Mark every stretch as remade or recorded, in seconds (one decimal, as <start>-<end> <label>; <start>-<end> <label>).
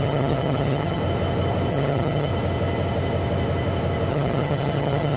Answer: 0.0-1.0 remade; 1.0-1.7 recorded; 1.7-2.3 remade; 2.3-4.1 recorded; 4.1-5.2 remade